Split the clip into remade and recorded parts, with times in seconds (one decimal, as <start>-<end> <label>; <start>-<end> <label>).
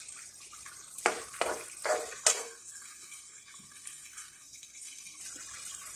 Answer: 0.0-2.3 recorded; 2.3-5.2 remade; 5.2-6.0 recorded